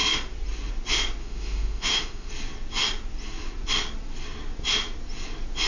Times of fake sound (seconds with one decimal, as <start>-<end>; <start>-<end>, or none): 1.2-2.3